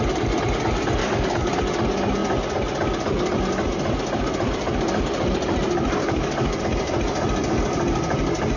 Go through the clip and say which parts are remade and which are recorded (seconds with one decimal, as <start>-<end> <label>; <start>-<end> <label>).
0.0-1.0 recorded; 1.0-1.6 remade; 1.6-6.0 recorded; 6.0-6.6 remade; 6.6-8.6 recorded